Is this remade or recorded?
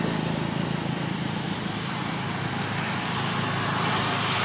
recorded